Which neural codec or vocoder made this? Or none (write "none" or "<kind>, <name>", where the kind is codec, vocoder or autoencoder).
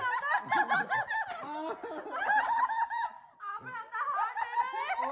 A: none